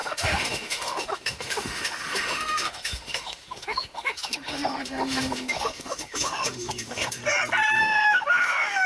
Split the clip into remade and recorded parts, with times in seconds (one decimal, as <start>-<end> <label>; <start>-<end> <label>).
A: 0.0-7.2 remade; 7.2-7.8 recorded; 7.8-8.9 remade